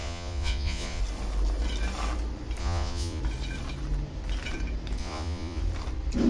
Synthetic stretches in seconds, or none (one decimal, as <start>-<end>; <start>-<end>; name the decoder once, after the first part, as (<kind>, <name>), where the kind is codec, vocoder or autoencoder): 0.0-1.0 (vocoder, Vocos); 2.6-3.2; 5.0-5.6